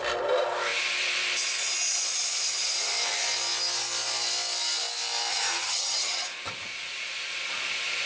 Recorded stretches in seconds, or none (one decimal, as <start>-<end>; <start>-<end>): 0.0-5.3; 6.2-8.1